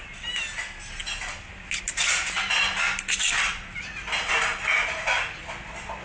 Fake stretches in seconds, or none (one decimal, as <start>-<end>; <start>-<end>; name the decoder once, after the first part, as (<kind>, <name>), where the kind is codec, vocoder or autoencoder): none